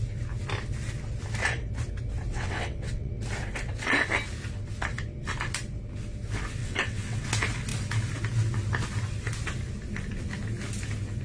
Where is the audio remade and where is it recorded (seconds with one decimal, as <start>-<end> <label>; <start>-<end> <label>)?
0.0-2.3 recorded; 2.3-3.1 remade; 3.1-6.6 recorded; 6.6-7.2 remade; 7.2-11.2 recorded